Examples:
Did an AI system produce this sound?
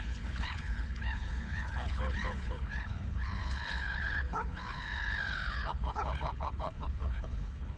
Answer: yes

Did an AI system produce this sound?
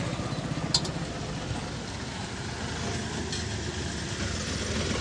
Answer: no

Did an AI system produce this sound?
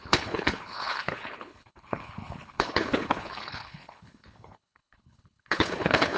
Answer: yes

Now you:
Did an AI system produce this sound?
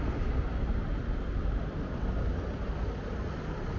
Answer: no